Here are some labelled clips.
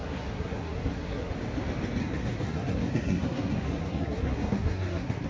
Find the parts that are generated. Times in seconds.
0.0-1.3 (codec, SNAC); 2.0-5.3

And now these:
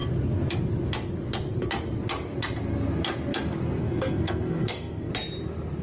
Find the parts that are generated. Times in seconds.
3.8-5.1 (codec, SNAC)

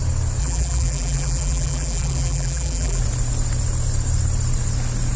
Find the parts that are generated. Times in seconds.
0.4-3.0 (vocoder, BigVGAN v2)

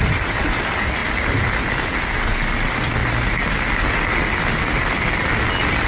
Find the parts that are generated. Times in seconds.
none